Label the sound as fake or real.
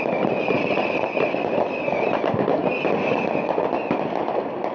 real